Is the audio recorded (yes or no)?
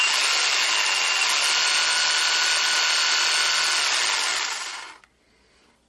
yes